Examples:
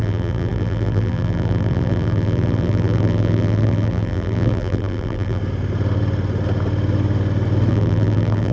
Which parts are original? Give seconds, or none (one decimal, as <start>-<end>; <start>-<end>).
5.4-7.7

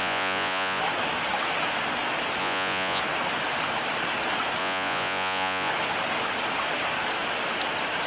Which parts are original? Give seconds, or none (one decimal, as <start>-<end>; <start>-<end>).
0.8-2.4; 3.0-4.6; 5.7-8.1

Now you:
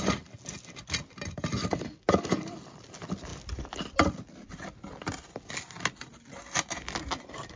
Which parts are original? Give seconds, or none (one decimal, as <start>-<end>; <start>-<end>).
0.0-7.6

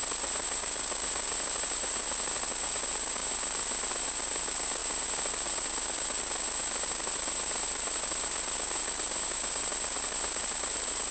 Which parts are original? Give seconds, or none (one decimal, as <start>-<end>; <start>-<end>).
0.0-11.1

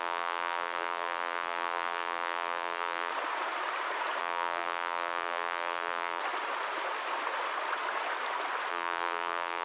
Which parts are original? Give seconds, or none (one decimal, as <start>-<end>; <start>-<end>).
3.1-4.2; 6.2-8.7

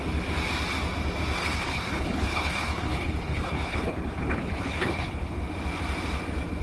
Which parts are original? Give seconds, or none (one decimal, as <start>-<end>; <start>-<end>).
0.0-1.4; 5.4-6.6

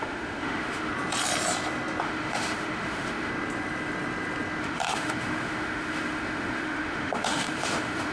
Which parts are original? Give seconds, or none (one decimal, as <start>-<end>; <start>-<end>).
0.9-2.0; 3.3-4.6

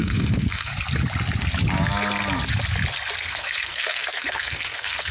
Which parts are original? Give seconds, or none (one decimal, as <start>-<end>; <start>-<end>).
0.7-3.2